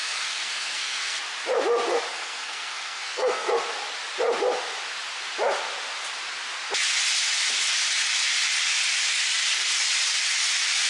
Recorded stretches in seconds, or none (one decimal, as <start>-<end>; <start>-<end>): 1.2-2.1; 3.5-10.9